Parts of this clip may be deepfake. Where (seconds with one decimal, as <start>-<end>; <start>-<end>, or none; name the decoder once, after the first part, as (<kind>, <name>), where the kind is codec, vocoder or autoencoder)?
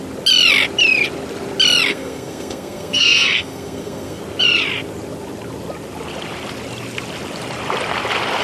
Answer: 1.9-4.2 (codec, SNAC)